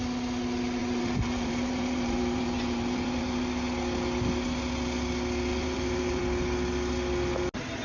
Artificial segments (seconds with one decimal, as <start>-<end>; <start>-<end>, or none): 0.8-3.4; 5.5-6.2